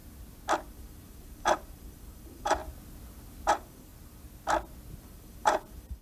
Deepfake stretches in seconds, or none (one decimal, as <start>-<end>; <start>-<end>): 0.7-2.6; 3.5-3.9; 5.0-6.0